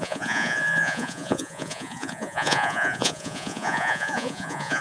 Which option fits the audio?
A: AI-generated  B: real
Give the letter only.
A